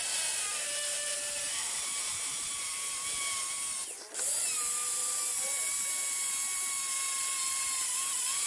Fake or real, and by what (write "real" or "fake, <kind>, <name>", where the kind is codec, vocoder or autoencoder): real